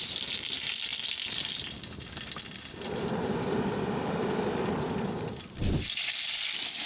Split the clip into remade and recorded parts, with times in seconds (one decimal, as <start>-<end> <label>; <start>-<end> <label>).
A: 0.0-6.9 recorded